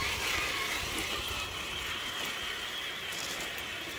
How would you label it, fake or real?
real